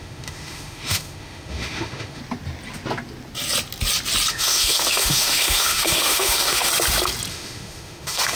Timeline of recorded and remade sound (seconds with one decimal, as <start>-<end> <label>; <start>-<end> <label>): 0.0-2.2 remade; 2.2-4.3 recorded; 4.3-6.7 remade; 6.7-7.3 recorded; 7.3-8.4 remade